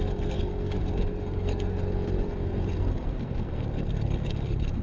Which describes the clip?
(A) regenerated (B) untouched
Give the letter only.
A